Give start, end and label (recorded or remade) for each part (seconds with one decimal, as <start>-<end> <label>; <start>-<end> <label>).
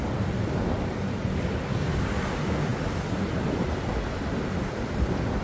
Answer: 0.0-5.4 recorded